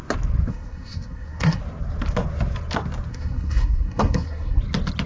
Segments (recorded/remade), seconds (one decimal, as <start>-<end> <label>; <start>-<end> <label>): 0.0-0.5 recorded; 0.5-1.6 remade; 1.6-3.1 recorded; 3.1-4.6 remade; 4.6-5.1 recorded